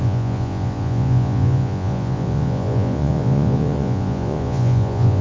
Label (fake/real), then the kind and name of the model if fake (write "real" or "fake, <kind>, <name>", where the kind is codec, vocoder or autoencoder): fake, vocoder, Vocos